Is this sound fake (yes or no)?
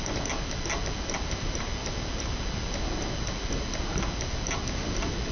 no